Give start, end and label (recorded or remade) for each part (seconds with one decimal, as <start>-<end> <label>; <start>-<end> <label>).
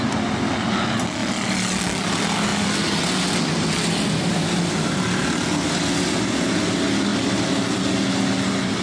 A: 0.0-1.2 recorded; 1.2-1.8 remade; 1.8-7.1 recorded; 7.1-7.7 remade; 7.7-8.8 recorded